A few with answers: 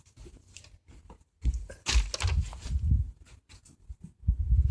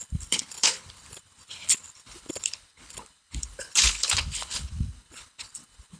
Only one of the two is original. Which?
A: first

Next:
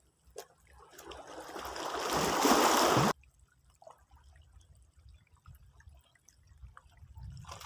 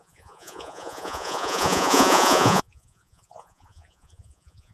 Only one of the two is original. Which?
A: first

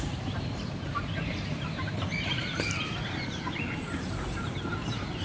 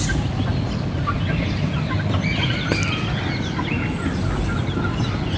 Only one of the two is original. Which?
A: second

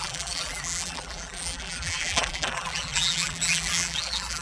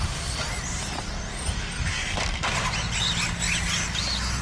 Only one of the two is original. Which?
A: second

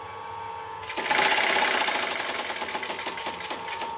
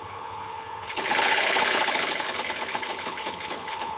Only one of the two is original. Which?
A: first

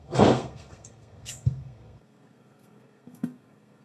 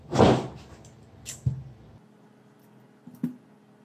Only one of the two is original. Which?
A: second